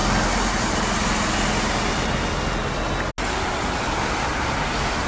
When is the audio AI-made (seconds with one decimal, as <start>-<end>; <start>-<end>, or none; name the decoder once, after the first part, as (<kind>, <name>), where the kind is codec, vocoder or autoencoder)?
none